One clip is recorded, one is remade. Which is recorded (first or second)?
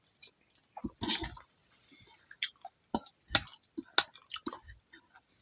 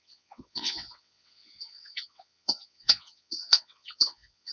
first